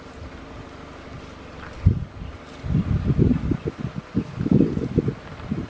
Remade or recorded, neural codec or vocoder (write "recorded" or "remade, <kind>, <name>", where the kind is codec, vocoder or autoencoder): recorded